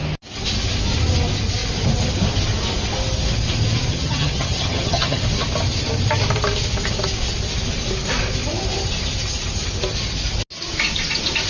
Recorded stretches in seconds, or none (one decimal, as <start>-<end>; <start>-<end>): 0.0-3.9; 5.2-11.5

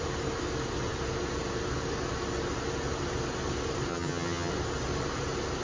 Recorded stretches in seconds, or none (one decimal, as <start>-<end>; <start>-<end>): 0.0-3.9; 4.5-5.6

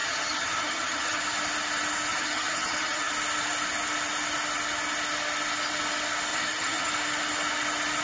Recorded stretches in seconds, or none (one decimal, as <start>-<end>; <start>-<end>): 1.2-2.1; 3.1-6.3; 6.9-8.0

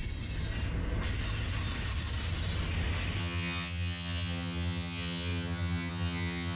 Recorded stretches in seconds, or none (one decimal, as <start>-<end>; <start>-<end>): 0.0-3.2